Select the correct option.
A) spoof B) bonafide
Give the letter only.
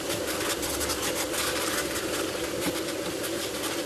B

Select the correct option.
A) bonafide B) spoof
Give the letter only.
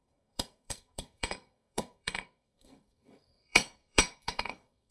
B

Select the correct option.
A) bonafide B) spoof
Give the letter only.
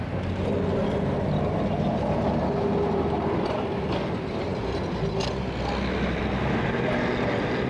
A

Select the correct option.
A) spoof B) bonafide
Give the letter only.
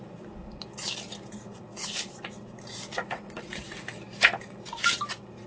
B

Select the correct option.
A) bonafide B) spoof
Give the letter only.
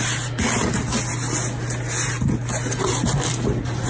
A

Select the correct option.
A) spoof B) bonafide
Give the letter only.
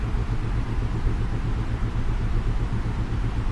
B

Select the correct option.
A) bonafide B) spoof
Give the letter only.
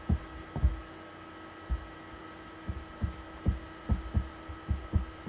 A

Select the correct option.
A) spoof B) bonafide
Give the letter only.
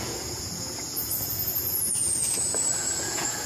A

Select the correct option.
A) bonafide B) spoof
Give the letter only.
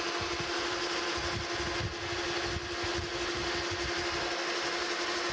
A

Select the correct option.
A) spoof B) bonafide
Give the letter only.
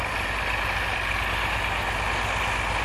B